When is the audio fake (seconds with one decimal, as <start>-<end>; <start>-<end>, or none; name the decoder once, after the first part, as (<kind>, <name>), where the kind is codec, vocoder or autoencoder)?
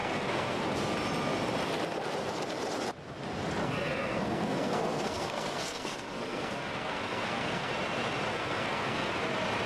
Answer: 0.0-0.6 (codec, SNAC); 3.6-7.7; 8.3-9.1